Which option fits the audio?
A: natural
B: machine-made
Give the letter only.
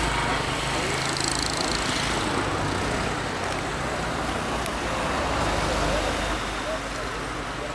A